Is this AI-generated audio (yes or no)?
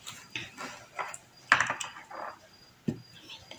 no